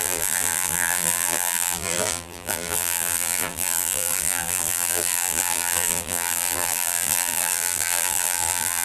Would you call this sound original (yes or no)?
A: no